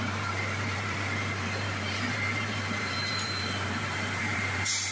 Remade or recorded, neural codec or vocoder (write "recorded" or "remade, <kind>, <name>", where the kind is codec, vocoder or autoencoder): remade, vocoder, BigVGAN v2